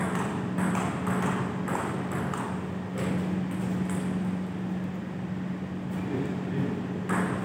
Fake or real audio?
real